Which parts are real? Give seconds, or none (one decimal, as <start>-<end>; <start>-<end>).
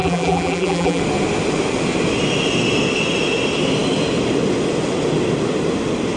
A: 1.0-6.2